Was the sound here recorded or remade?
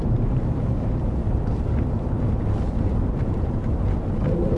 remade